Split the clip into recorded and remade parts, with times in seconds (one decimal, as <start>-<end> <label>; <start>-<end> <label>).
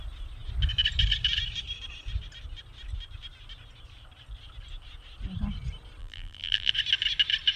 0.0-6.0 recorded; 6.0-6.7 remade; 6.7-7.6 recorded